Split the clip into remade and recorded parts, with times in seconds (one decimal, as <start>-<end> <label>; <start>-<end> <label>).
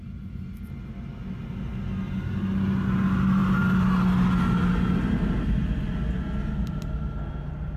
0.0-7.8 recorded